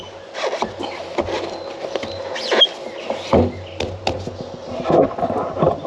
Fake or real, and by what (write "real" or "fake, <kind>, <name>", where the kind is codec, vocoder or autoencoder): real